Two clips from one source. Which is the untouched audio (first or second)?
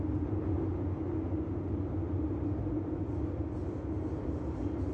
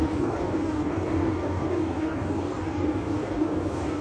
first